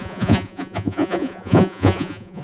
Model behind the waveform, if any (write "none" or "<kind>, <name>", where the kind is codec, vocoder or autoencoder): vocoder, Vocos